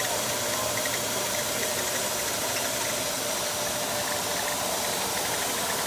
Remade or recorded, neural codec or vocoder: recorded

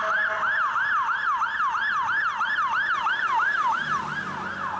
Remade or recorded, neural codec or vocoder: recorded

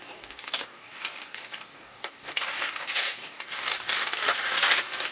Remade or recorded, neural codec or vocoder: remade, codec, DAC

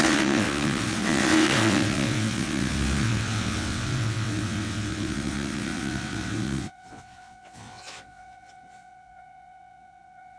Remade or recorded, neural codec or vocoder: remade, vocoder, WaveNeXt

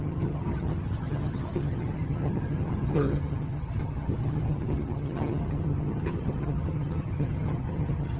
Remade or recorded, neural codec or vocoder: remade, vocoder, HiFi-GAN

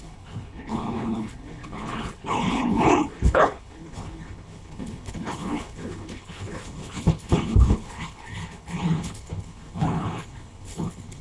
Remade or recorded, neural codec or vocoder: remade, codec, HILCodec